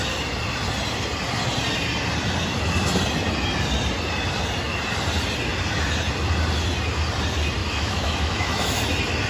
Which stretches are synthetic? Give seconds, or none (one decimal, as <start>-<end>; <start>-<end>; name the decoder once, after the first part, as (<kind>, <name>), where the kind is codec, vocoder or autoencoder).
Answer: 7.6-8.8 (autoencoder, DAC-VAE)